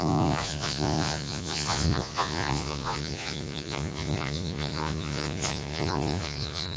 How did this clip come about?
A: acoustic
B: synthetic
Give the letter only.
B